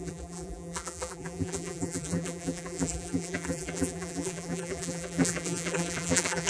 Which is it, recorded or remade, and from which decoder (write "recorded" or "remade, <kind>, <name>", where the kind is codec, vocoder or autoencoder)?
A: remade, vocoder, BigVGAN v2